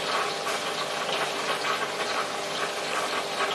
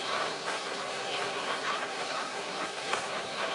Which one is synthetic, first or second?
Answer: second